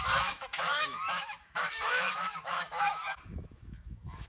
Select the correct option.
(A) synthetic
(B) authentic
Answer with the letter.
A